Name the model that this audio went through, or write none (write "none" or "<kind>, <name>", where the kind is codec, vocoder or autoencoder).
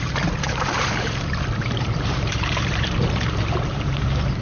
vocoder, BigVGAN v2